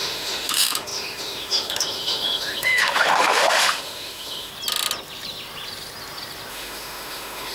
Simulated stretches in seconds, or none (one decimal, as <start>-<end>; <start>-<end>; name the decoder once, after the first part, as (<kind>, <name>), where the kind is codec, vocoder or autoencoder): 0.0-4.5 (autoencoder, DAC-VAE); 6.5-7.5